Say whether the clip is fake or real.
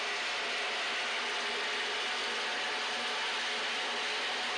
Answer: real